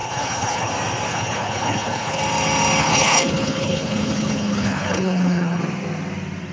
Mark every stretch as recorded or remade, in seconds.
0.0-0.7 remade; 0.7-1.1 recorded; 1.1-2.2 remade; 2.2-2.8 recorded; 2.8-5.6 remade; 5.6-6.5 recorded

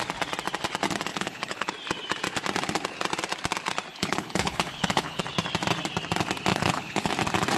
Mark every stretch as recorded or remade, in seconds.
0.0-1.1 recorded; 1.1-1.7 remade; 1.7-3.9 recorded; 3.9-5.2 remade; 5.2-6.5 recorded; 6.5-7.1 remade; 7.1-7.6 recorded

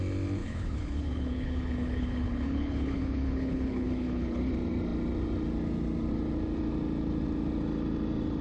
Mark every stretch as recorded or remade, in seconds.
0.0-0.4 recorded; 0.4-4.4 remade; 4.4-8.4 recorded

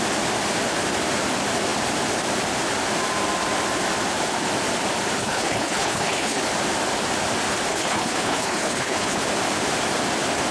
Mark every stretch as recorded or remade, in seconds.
0.0-5.2 recorded; 5.2-6.4 remade; 6.4-7.7 recorded; 7.7-9.2 remade; 9.2-10.5 recorded

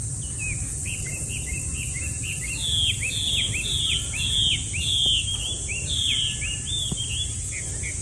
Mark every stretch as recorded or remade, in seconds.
0.0-8.0 recorded

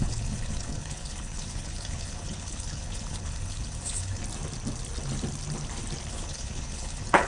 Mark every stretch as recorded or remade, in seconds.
0.0-4.2 remade; 4.2-6.1 recorded; 6.1-7.3 remade

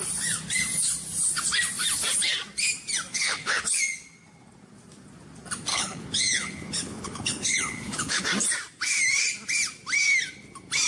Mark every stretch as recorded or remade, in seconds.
0.0-3.1 recorded; 3.1-3.8 remade; 3.8-5.7 recorded; 5.7-8.2 remade; 8.2-10.9 recorded